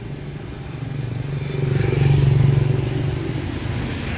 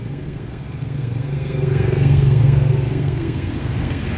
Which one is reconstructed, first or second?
second